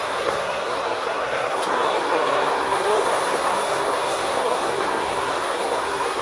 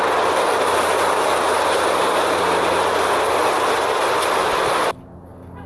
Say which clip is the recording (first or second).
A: second